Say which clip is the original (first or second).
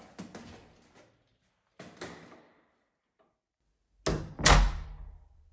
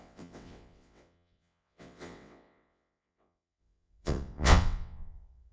first